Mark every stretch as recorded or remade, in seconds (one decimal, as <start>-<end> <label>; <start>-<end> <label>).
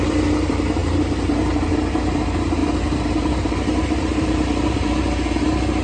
0.0-5.8 remade